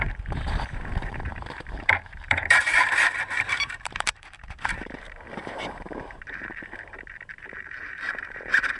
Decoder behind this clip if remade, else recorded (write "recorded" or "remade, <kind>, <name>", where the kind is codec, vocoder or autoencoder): remade, vocoder, BigVGAN v2